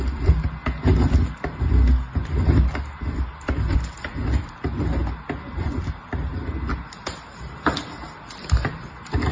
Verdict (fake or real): real